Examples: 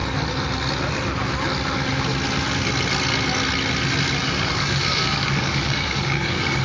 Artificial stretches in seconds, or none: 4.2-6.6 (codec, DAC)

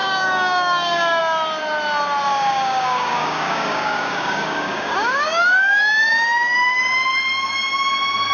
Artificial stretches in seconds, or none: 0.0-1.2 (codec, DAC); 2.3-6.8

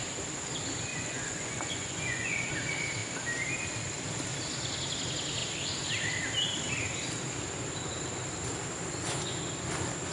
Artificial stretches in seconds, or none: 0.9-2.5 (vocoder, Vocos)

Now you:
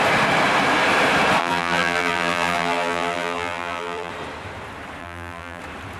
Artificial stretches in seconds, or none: 1.4-4.1 (vocoder, BigVGAN v2); 5.0-5.6